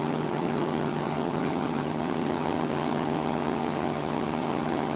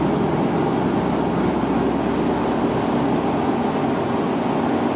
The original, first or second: second